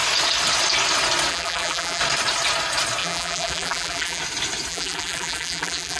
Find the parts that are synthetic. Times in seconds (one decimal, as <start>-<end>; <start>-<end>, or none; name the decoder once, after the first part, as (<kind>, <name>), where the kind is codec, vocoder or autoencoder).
1.3-2.0 (vocoder, BigVGAN v2); 3.0-4.2; 4.7-6.0